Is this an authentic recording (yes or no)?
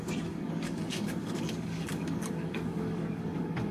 no